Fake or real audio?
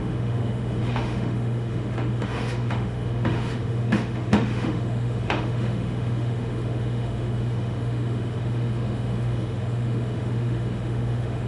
fake